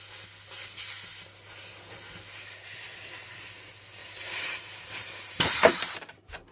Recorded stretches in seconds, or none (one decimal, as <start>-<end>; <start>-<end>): 0.0-4.0; 6.1-6.5